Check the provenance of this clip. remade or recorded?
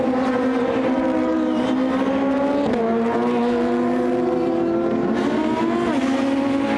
recorded